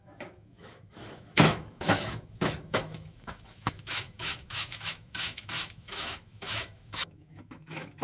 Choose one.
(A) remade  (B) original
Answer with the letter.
A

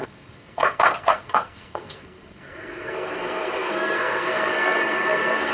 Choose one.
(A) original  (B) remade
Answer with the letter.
B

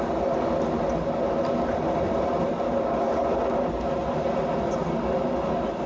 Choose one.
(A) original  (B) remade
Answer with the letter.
A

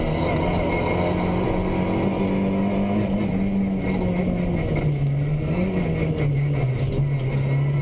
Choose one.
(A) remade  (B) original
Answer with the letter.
B